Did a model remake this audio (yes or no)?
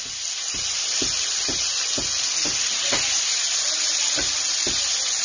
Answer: no